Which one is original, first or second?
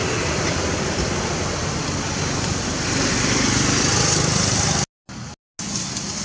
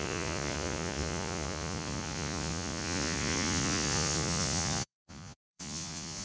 first